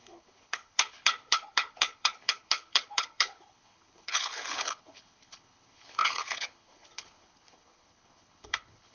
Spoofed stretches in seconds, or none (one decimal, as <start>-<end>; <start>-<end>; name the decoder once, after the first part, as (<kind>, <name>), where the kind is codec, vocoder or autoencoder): 0.0-8.9 (codec, HILCodec)